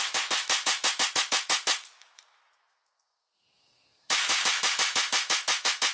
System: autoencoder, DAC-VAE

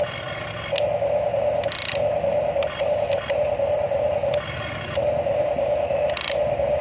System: none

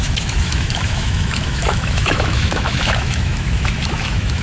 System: autoencoder, DAC-VAE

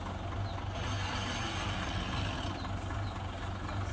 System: none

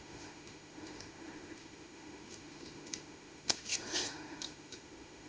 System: autoencoder, DAC-VAE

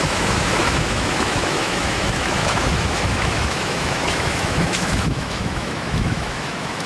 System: autoencoder, DAC-VAE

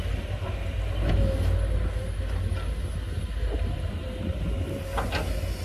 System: none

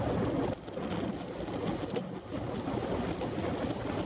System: none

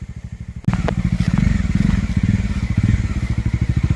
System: none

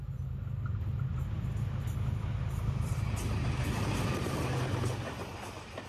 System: none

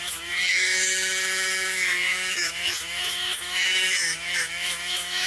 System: autoencoder, DAC-VAE